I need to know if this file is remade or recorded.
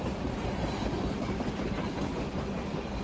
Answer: recorded